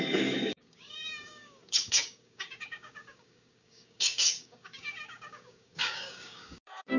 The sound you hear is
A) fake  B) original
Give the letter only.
A